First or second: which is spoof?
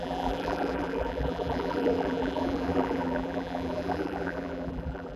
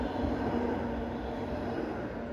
first